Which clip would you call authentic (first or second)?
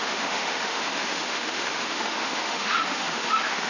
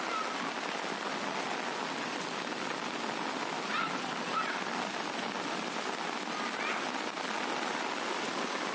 second